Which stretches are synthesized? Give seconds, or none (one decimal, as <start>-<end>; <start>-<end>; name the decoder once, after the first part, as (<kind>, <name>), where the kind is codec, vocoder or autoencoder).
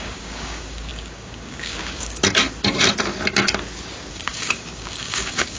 0.0-2.2 (codec, DAC); 4.1-5.6